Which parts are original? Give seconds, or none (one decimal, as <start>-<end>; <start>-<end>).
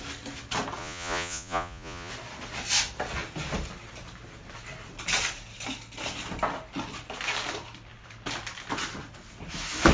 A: 0.0-0.8; 2.1-9.9